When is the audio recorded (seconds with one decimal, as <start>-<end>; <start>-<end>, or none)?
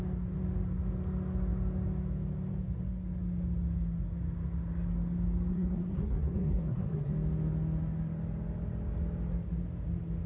0.0-5.5; 7.1-10.3